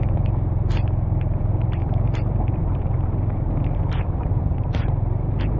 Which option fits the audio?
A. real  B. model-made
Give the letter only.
B